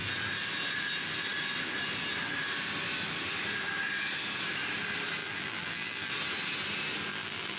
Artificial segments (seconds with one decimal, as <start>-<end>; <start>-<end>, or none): 5.2-6.1; 7.1-7.6